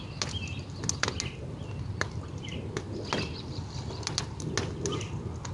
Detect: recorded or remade recorded